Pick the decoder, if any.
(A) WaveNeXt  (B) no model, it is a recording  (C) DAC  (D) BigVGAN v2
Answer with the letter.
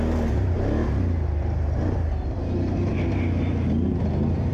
B